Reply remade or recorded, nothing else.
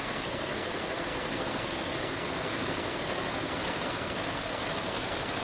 remade